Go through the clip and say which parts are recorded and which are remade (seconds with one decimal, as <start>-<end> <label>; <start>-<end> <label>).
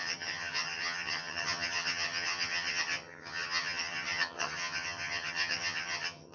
0.0-6.3 remade